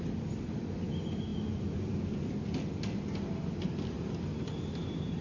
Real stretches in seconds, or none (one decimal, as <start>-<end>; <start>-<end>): 0.0-5.2